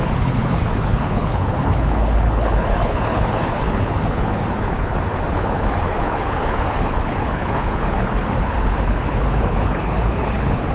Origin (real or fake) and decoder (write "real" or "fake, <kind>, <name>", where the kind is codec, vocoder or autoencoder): fake, codec, HILCodec